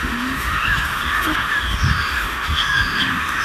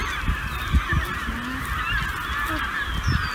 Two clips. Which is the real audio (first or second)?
second